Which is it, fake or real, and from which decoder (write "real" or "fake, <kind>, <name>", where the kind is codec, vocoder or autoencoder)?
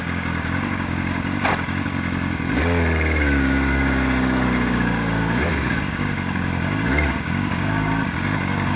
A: fake, codec, DAC